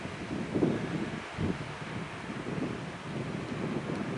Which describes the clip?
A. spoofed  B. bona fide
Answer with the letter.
B